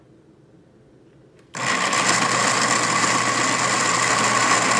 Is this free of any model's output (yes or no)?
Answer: yes